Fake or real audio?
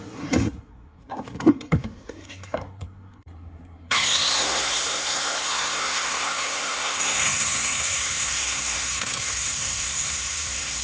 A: fake